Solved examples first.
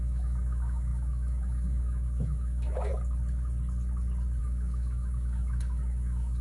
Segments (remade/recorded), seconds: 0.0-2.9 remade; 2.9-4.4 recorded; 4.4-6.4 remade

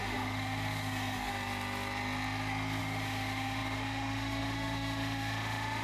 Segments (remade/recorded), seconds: 0.0-1.3 remade; 1.3-2.8 recorded; 2.8-5.8 remade